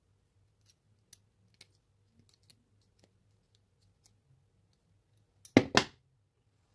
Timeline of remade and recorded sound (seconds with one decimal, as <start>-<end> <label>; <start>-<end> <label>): 0.0-6.7 recorded